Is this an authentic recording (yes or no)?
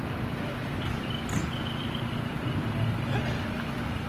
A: no